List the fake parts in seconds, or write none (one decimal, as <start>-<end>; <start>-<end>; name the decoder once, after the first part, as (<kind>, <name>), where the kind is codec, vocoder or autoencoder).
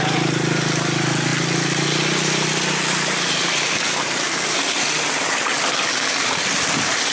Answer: none